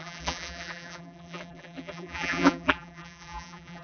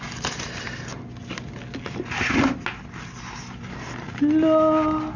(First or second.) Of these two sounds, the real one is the second